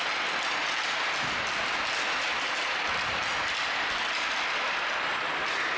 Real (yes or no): yes